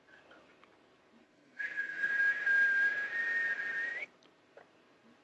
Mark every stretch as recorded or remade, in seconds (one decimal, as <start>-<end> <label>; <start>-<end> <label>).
0.0-1.2 recorded; 1.2-2.1 remade; 2.1-5.2 recorded